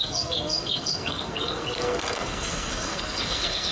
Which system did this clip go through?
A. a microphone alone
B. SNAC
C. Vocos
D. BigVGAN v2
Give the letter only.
B